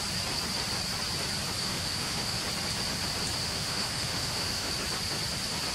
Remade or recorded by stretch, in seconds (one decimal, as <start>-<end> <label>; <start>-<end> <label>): 0.0-1.6 recorded; 1.6-2.4 remade; 2.4-3.4 recorded; 3.4-4.7 remade; 4.7-5.7 recorded